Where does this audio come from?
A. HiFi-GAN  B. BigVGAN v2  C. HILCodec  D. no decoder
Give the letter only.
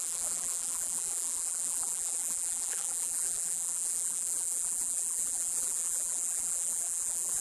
B